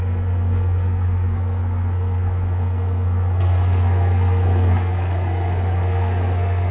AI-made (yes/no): yes